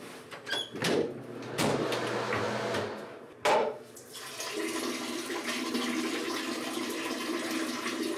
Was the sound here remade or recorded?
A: recorded